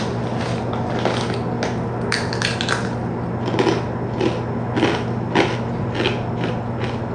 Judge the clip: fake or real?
real